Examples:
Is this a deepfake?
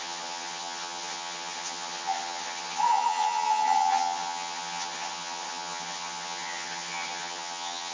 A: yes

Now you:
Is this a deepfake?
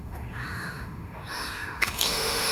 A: yes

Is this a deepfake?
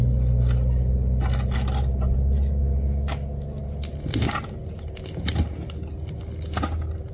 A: no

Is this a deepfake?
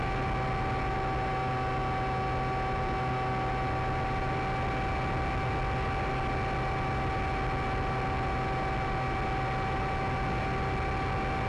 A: no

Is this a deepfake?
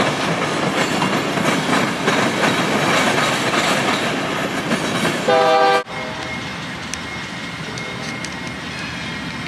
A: no